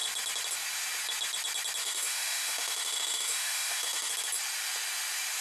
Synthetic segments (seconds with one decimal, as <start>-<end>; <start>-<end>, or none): 1.8-4.1